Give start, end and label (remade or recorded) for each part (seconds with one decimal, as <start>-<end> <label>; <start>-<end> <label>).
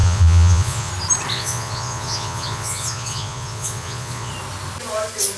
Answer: 0.0-0.9 remade; 0.9-1.3 recorded; 1.3-4.3 remade; 4.3-5.4 recorded